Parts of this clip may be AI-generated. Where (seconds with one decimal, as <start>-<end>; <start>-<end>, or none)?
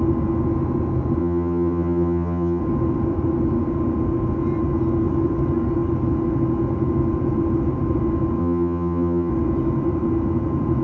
1.2-2.6; 8.4-9.3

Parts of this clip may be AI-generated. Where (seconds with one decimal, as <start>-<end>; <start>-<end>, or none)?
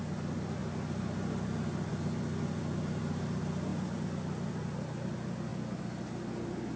none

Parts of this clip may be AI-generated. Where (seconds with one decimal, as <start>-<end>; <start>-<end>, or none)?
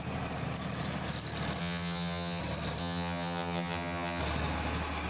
1.6-2.4; 2.8-4.2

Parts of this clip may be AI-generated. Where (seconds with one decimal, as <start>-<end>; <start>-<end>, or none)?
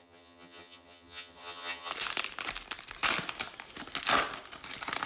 0.0-1.9